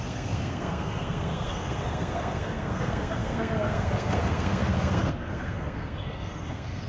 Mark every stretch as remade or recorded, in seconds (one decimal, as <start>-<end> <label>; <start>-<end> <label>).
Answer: 0.0-6.9 remade